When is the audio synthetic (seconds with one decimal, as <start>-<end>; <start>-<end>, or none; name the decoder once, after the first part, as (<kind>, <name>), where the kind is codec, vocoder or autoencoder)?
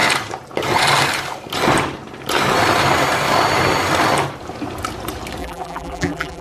5.4-6.4 (vocoder, BigVGAN v2)